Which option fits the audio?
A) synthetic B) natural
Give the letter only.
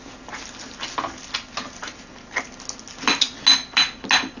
B